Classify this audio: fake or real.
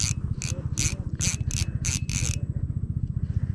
real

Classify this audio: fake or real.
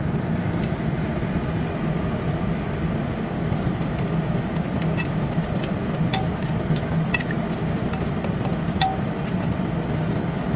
real